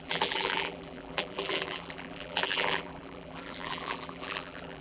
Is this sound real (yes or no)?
no